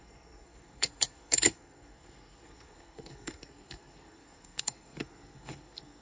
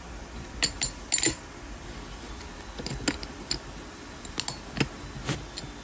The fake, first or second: first